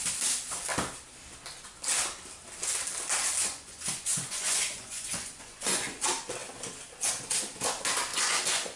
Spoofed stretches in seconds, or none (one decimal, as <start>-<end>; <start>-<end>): 3.4-6.0; 8.1-8.8